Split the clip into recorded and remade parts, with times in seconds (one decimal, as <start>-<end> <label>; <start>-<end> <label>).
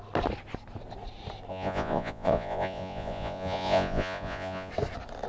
0.0-1.5 recorded; 1.5-4.7 remade; 4.7-5.3 recorded